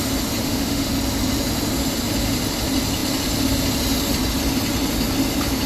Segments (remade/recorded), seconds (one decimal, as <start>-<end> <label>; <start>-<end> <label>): 0.0-0.4 recorded; 0.4-0.9 remade; 0.9-5.7 recorded